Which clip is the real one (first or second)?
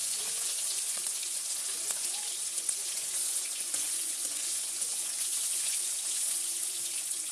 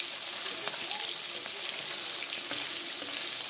second